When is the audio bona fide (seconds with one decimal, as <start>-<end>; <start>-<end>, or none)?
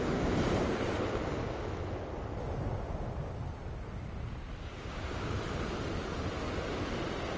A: 0.0-4.6; 5.3-7.4